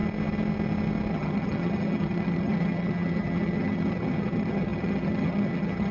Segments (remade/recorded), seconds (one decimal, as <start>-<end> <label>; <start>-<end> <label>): 0.0-1.1 recorded; 1.1-5.9 remade